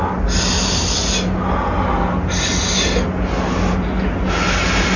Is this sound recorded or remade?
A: recorded